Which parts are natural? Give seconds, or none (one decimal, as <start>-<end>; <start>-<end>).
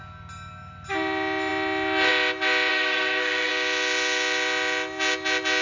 0.0-2.7; 3.5-5.6